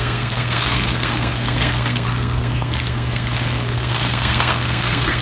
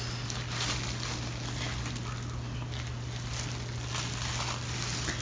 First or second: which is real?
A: second